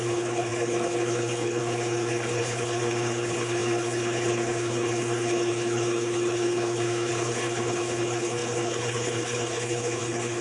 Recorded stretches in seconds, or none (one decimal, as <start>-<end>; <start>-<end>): none